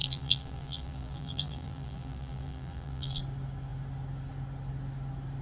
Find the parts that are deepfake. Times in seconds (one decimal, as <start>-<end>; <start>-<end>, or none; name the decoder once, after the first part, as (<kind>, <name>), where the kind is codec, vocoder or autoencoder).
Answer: 0.0-3.2 (vocoder, BigVGAN v2)